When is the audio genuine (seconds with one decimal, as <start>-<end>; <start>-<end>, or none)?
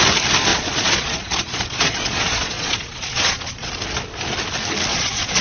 0.0-0.5; 3.7-4.9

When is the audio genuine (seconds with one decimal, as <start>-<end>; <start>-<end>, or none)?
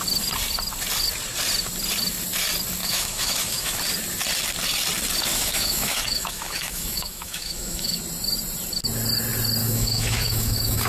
0.0-2.8; 3.8-5.3; 8.0-9.6